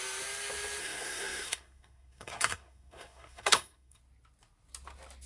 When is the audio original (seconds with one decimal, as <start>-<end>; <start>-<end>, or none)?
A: 0.0-0.8; 4.0-5.3